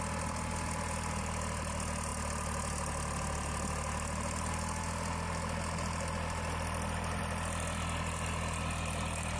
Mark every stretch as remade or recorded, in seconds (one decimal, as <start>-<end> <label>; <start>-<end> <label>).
0.0-9.4 recorded